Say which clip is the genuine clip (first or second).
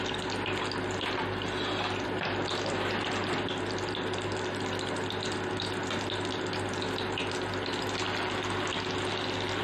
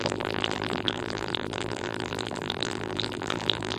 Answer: first